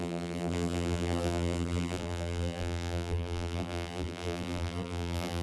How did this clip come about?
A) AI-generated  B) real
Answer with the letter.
A